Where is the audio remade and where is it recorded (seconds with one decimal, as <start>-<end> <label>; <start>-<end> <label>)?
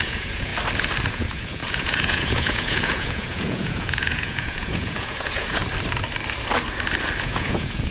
0.0-0.5 remade; 0.5-1.1 recorded; 1.1-5.6 remade; 5.6-7.2 recorded; 7.2-7.9 remade